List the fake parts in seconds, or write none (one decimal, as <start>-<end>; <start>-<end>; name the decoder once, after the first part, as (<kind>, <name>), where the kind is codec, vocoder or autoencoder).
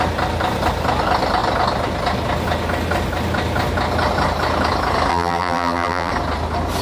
5.1-6.1 (vocoder, BigVGAN v2)